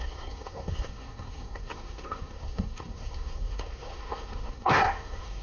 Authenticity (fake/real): fake